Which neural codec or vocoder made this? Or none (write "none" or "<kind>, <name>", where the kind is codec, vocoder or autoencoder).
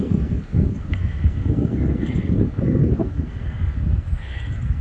codec, SNAC